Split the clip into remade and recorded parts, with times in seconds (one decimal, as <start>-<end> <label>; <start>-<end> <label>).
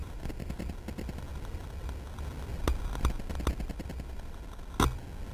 0.0-0.7 remade; 0.7-5.3 recorded